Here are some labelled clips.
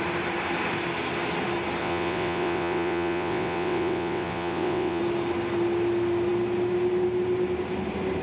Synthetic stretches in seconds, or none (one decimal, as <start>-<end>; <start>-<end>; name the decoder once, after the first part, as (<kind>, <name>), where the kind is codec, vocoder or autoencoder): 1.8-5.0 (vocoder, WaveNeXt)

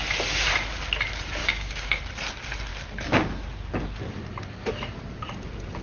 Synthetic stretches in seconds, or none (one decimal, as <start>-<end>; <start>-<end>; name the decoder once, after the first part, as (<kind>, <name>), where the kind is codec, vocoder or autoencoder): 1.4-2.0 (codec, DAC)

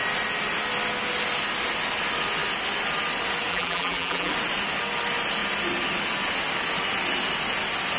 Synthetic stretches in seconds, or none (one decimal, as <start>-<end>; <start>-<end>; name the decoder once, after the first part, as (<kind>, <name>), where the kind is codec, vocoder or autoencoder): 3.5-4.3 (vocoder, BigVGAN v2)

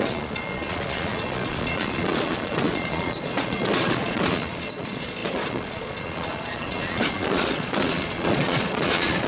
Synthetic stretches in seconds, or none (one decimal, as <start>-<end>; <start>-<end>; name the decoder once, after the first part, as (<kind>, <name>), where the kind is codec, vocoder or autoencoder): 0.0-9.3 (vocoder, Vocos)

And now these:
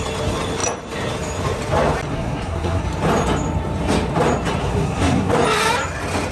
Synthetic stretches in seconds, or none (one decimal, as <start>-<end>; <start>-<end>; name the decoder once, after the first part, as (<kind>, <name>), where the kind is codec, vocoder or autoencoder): 2.1-2.8 (codec, SNAC); 4.6-5.3